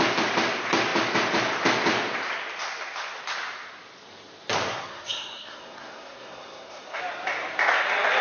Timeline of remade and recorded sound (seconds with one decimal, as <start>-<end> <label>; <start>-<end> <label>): 0.0-4.7 recorded; 4.7-7.0 remade; 7.0-8.2 recorded